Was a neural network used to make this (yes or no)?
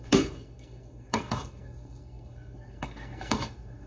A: yes